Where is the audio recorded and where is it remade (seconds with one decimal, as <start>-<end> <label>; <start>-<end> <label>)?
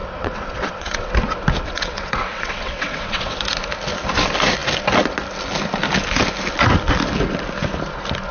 0.0-1.1 remade; 1.1-1.6 recorded; 1.6-3.4 remade; 3.4-8.3 recorded